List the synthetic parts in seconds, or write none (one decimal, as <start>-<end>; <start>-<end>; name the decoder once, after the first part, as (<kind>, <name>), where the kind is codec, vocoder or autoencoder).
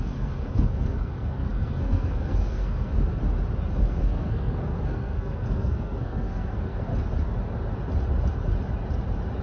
0.0-3.2 (codec, SNAC); 3.8-6.9